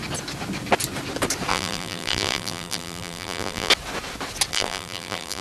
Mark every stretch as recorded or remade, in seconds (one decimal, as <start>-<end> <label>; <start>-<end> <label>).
0.0-1.5 recorded; 1.5-3.7 remade; 3.7-4.5 recorded; 4.5-5.4 remade